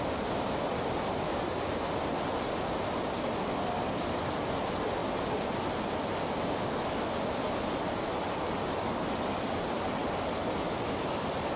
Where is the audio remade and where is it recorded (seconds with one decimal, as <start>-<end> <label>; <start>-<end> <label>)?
0.0-11.6 recorded